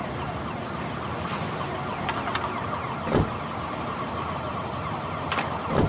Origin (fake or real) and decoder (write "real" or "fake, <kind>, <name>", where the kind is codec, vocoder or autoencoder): real